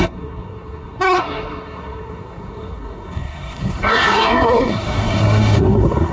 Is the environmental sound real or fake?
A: fake